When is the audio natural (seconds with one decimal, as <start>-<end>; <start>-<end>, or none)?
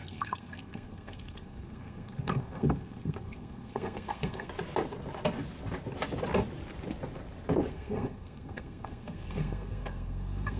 4.5-7.7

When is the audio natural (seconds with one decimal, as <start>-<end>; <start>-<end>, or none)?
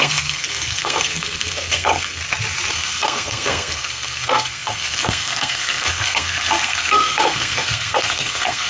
2.2-2.7